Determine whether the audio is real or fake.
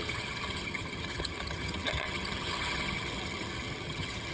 fake